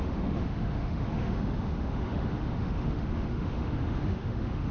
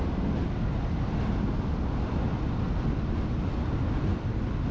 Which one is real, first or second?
second